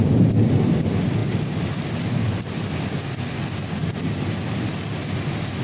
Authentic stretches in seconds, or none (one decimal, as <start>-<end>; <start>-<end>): 0.0-5.6